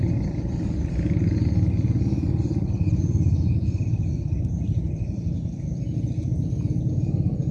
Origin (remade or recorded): recorded